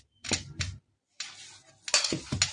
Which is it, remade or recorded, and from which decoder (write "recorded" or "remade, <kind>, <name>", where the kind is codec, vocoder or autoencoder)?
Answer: recorded